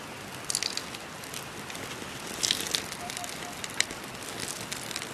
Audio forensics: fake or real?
real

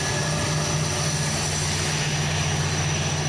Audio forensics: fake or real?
real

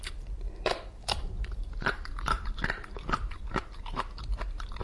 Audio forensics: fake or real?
fake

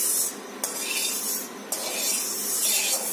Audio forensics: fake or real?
real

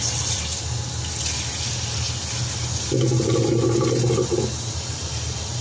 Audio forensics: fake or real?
real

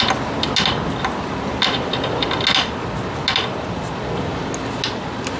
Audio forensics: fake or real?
real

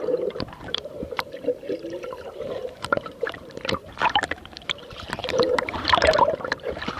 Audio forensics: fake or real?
fake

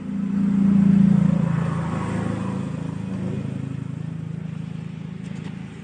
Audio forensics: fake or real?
real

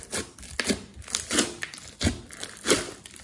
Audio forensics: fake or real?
real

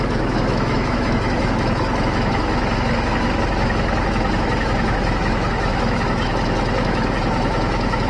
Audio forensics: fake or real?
fake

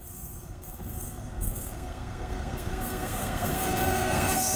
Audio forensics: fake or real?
fake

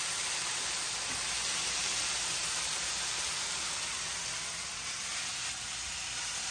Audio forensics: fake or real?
real